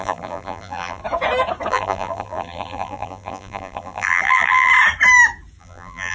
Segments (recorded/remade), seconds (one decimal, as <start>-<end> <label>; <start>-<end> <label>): 0.0-1.0 remade; 1.0-1.7 recorded; 1.7-4.7 remade; 4.7-5.6 recorded; 5.6-6.1 remade